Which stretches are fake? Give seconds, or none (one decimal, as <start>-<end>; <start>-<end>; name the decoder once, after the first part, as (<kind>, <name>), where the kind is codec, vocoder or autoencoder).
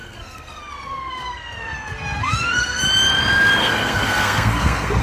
0.0-2.8 (codec, SNAC); 3.6-5.0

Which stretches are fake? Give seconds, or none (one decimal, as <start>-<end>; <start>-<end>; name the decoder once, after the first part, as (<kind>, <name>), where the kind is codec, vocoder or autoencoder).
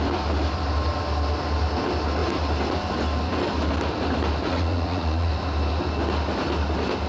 4.5-5.3 (vocoder, Vocos)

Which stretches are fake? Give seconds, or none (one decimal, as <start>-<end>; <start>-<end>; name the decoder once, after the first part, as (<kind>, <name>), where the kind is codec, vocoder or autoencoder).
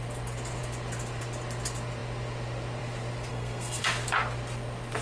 3.3-3.8 (codec, SNAC)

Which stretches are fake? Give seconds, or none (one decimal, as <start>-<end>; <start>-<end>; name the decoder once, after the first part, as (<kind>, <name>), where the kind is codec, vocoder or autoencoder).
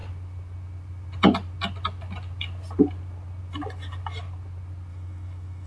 4.9-5.7 (autoencoder, DAC-VAE)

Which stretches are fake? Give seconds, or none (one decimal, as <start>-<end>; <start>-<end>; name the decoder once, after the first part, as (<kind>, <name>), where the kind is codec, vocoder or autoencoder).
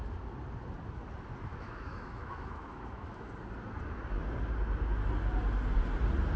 1.5-3.3 (autoencoder, DAC-VAE)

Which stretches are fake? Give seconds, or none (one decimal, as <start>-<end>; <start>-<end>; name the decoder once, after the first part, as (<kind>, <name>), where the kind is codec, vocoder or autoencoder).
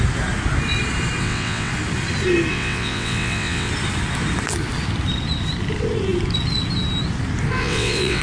1.2-1.7 (vocoder, WaveNeXt); 2.5-3.7; 7.6-8.2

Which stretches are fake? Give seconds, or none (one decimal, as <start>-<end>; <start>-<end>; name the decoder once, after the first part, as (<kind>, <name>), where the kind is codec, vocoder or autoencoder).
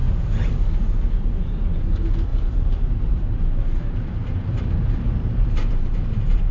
1.2-6.5 (vocoder, BigVGAN v2)